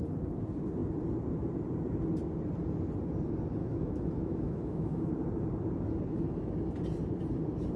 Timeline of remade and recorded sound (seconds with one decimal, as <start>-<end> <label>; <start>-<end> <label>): 0.0-3.6 recorded; 3.6-5.1 remade; 5.1-7.8 recorded